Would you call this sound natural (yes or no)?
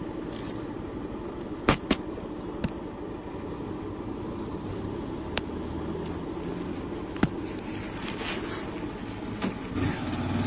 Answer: yes